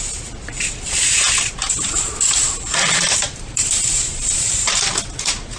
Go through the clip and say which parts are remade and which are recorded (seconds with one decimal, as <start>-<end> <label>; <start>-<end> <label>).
0.0-1.6 recorded; 1.6-5.0 remade; 5.0-5.6 recorded